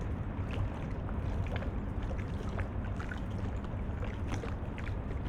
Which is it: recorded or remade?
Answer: remade